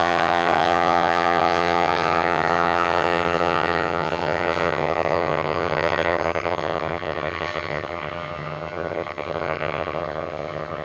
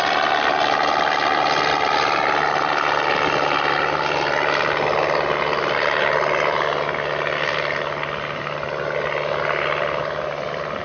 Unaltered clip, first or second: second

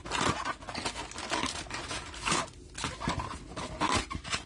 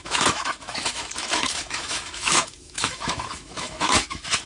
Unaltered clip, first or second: first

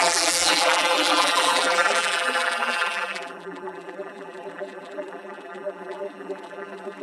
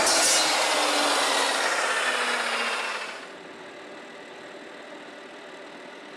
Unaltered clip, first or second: second